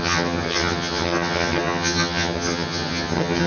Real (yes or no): no